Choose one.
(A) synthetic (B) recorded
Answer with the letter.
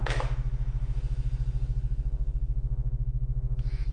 A